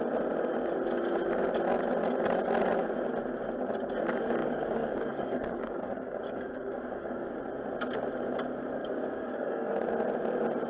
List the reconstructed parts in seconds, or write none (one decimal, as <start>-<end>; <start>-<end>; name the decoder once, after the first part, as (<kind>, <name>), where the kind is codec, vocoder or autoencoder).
4.4-7.4 (codec, DAC); 8.8-9.7